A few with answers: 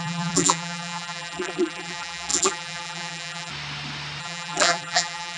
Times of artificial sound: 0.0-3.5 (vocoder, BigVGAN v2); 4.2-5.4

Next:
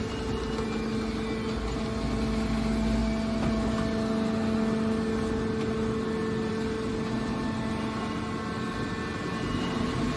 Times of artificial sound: none

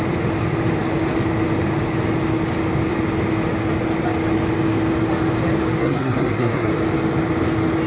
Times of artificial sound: 5.8-6.7 (codec, SNAC)